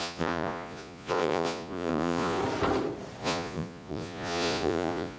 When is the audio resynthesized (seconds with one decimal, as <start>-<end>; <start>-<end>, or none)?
0.0-2.4; 3.2-5.2